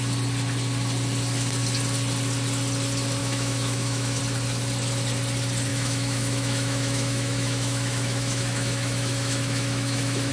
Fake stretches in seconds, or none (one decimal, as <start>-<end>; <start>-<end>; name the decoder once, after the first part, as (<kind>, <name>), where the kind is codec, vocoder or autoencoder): 3.2-4.2 (autoencoder, DAC-VAE); 5.7-10.3